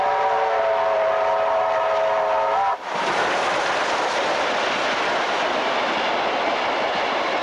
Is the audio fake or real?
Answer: real